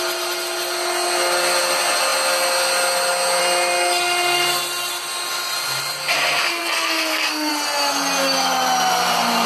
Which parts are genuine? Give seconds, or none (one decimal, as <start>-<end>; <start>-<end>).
0.0-6.5; 7.5-9.5